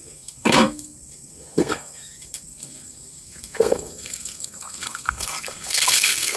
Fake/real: fake